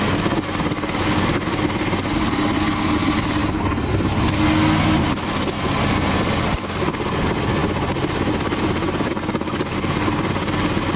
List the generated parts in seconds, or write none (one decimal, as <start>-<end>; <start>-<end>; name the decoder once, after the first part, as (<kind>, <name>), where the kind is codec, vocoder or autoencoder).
none